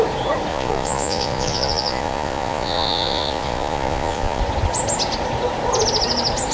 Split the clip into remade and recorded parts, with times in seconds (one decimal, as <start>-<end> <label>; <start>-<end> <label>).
0.0-0.5 recorded; 0.5-4.4 remade; 4.4-6.5 recorded